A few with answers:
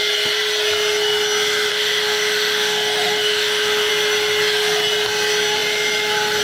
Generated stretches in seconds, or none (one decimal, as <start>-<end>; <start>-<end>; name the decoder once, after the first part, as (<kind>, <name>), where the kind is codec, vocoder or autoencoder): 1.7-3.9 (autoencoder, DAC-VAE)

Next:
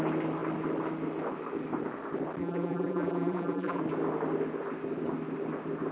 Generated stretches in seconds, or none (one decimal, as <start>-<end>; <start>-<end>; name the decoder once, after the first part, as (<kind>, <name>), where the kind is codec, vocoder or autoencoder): 2.4-3.8 (vocoder, BigVGAN v2)

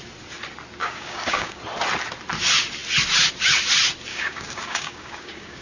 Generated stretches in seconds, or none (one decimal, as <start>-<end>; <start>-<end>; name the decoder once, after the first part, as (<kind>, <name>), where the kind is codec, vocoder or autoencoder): 0.8-1.6 (codec, DAC); 4.1-5.6